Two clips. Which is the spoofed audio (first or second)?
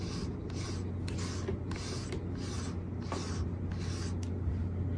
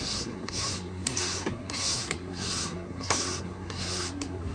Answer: second